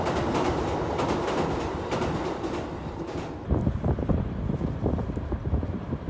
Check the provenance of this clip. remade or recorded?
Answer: recorded